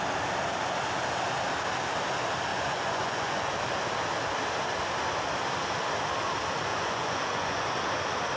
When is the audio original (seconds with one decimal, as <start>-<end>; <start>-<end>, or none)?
0.0-2.5; 3.5-6.7; 7.7-8.4